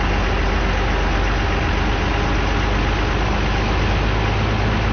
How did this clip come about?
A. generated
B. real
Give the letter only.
B